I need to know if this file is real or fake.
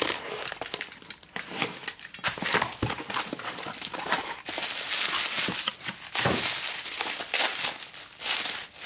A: real